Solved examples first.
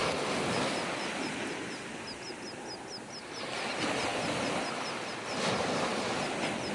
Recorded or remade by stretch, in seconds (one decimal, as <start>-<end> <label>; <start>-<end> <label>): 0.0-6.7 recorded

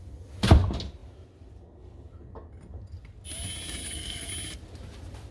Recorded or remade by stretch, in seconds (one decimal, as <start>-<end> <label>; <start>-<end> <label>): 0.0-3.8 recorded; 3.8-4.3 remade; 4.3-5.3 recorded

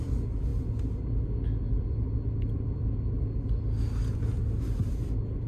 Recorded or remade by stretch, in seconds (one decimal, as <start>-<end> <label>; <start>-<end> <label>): 0.0-5.5 recorded